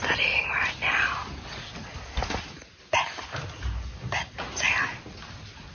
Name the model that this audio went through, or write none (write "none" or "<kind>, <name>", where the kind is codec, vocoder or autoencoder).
none